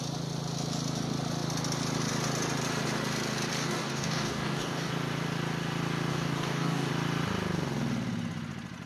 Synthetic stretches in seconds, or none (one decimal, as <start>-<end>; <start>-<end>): 3.6-4.9; 6.1-6.9